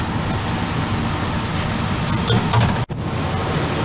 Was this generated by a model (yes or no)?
no